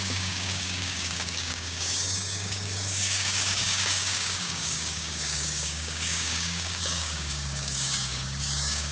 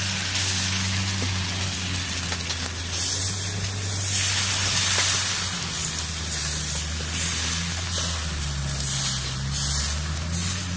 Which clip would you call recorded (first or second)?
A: second